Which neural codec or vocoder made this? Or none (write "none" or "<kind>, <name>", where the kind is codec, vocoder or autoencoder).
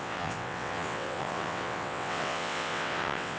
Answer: vocoder, WaveNeXt